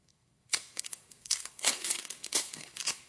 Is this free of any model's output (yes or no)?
no